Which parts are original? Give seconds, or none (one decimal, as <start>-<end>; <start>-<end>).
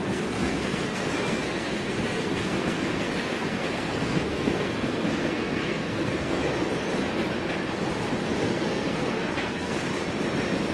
6.5-8.4; 9.9-10.7